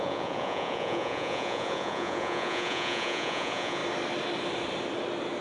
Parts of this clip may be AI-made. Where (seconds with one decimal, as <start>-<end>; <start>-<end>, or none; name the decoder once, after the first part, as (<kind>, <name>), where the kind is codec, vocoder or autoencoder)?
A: 0.0-3.8 (vocoder, Vocos)